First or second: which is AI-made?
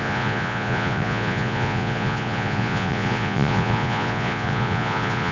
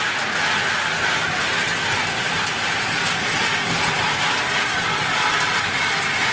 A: first